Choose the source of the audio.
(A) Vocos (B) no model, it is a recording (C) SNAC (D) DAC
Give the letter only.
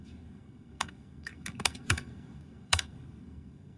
C